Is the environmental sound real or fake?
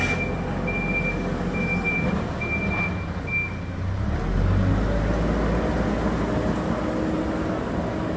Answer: real